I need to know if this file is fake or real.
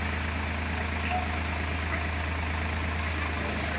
real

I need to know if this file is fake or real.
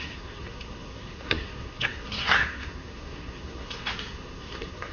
fake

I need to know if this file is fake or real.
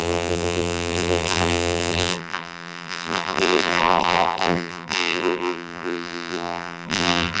fake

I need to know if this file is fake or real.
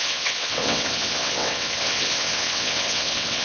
fake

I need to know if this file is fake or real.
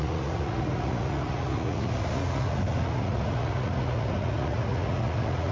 fake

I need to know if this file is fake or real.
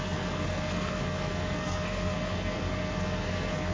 fake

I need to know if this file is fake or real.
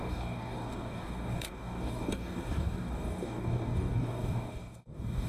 fake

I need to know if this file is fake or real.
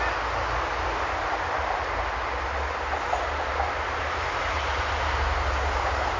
real